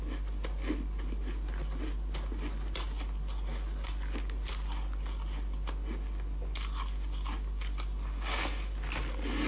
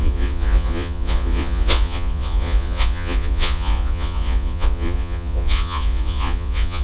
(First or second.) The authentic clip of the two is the first